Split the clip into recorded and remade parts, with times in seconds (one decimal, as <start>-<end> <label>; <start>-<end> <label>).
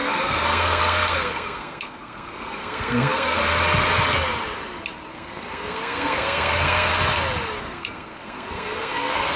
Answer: 0.0-3.4 remade; 3.4-5.1 recorded; 5.1-6.9 remade; 6.9-7.6 recorded; 7.6-9.4 remade